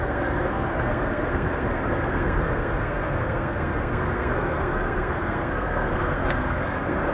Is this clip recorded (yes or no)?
no